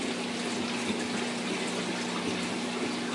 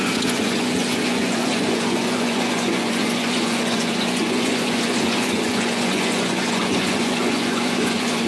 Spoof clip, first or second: second